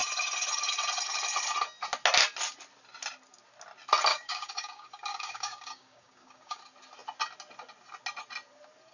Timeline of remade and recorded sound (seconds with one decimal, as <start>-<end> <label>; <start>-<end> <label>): 0.0-4.1 recorded; 4.1-6.6 remade; 6.6-8.9 recorded